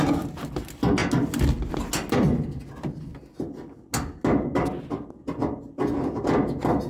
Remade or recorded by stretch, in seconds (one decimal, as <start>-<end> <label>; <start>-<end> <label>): 0.0-6.9 recorded